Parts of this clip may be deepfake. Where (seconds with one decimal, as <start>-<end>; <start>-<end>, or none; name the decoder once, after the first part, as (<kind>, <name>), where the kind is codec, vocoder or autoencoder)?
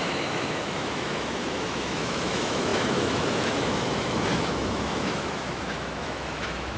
0.0-6.8 (autoencoder, DAC-VAE)